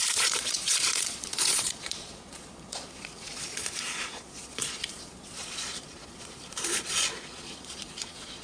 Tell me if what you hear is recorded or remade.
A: remade